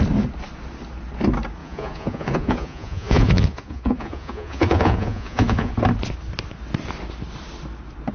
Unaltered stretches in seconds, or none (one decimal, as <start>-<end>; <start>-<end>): 0.0-1.6; 5.7-8.1